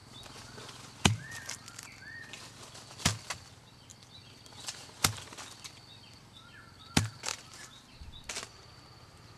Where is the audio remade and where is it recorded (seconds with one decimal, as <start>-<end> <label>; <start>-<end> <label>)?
0.0-7.3 recorded; 7.3-7.9 remade; 7.9-9.4 recorded